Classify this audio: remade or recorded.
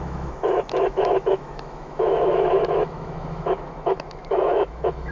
remade